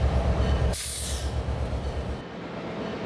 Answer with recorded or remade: recorded